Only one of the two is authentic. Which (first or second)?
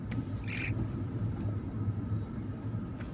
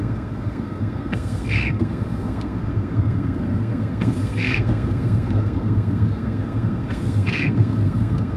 first